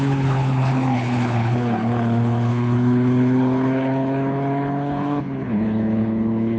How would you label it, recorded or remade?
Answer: remade